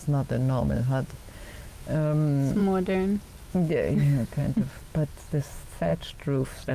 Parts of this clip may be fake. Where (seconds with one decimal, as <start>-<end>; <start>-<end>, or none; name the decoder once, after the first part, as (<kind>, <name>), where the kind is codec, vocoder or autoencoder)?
0.0-2.6 (autoencoder, DAC-VAE); 3.5-4.4; 5.2-5.9